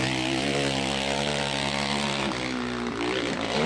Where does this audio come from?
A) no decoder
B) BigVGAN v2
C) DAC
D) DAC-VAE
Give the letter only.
A